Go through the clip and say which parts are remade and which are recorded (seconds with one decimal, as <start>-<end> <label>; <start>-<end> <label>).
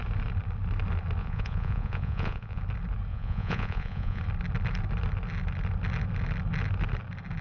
0.0-1.2 recorded; 1.2-2.6 remade; 2.6-3.1 recorded; 3.1-4.2 remade; 4.2-7.4 recorded